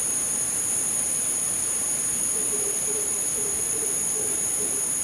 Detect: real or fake fake